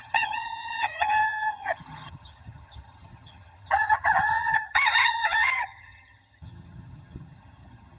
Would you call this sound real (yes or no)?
no